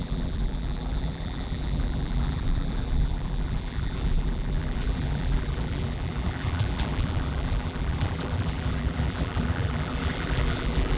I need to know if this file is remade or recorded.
remade